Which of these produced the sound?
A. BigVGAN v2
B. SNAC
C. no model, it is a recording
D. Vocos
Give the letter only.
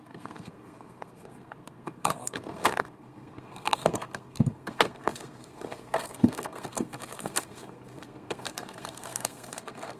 B